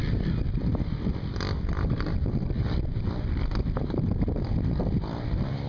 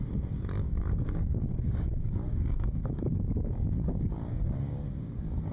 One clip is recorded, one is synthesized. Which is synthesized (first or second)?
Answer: second